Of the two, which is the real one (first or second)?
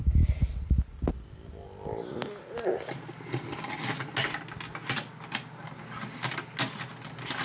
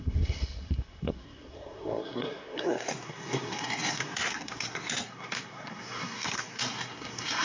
first